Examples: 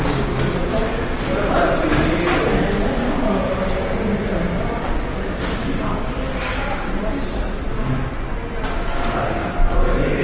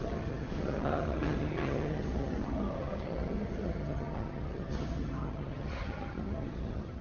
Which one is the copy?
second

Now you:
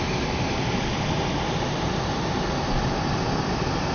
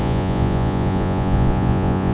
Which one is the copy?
second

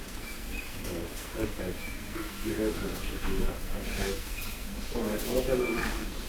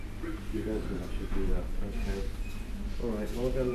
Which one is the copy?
first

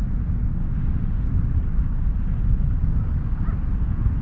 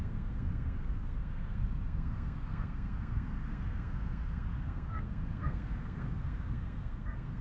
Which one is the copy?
second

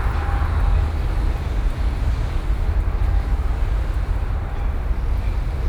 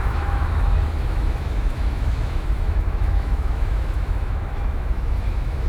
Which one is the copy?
second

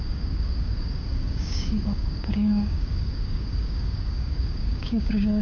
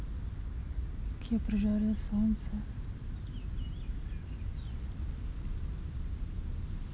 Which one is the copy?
first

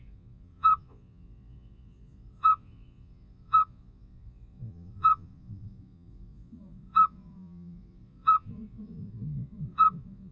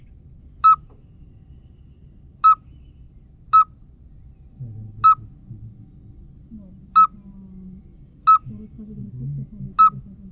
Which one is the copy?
first